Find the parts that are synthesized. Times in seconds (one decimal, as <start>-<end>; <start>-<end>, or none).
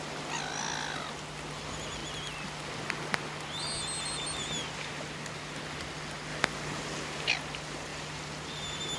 none